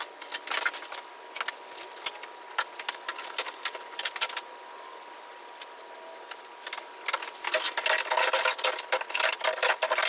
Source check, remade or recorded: recorded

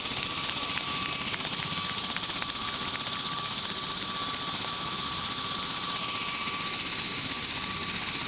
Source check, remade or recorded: recorded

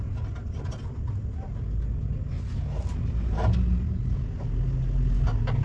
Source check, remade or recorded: recorded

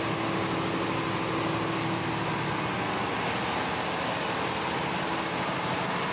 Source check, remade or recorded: recorded